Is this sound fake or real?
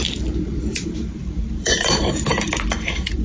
fake